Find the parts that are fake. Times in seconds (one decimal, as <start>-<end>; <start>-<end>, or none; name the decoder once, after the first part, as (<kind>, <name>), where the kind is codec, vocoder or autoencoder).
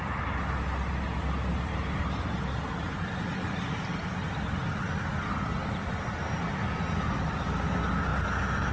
none